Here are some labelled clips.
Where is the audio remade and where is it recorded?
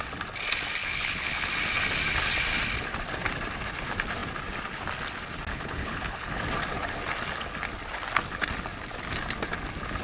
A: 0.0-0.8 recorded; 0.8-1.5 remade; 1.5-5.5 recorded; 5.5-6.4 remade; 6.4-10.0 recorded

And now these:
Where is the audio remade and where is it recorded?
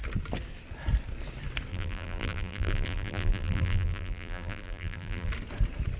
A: 0.0-1.7 recorded; 1.7-5.3 remade; 5.3-6.0 recorded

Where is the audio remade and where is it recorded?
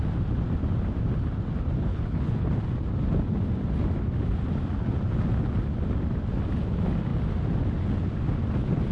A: 0.0-1.9 recorded; 1.9-2.5 remade; 2.5-8.9 recorded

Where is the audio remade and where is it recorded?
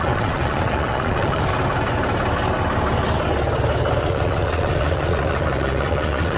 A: 0.0-1.5 remade; 1.5-4.0 recorded; 4.0-6.4 remade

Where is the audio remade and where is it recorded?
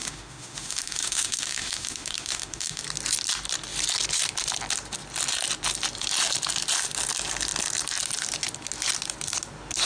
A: 0.0-2.8 remade; 2.8-9.9 recorded